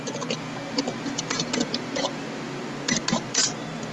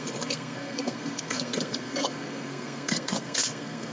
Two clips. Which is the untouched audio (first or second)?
first